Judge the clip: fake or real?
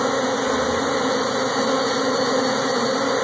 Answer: real